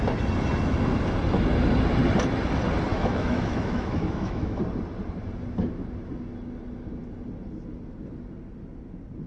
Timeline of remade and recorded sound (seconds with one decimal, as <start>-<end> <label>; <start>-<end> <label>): 0.0-2.9 recorded; 2.9-4.6 remade; 4.6-9.3 recorded